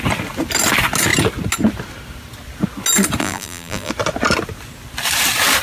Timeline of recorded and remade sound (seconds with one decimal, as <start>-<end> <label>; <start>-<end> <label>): 0.0-3.2 recorded; 3.2-3.9 remade; 3.9-5.6 recorded